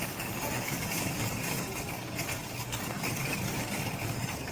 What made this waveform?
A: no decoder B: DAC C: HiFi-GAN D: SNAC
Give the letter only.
B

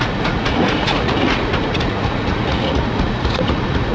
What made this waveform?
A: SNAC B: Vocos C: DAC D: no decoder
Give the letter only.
B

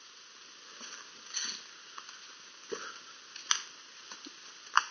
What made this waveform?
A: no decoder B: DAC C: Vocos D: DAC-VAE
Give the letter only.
A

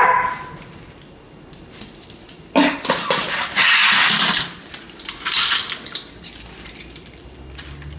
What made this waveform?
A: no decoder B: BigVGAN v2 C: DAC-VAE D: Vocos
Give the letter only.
A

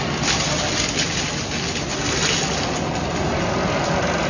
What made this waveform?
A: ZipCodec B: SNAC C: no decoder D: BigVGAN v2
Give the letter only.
C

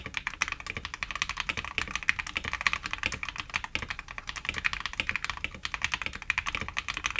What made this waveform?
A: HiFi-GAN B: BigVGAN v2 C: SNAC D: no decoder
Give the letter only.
D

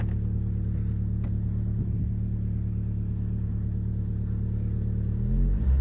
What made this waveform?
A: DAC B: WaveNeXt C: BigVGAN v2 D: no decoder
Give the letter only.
D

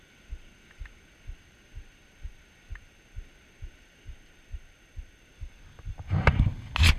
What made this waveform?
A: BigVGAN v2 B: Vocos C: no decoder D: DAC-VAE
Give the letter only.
C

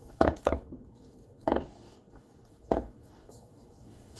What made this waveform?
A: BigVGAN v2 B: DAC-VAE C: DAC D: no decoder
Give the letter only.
C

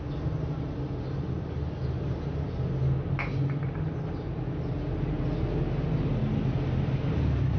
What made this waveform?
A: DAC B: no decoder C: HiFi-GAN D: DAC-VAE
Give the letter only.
B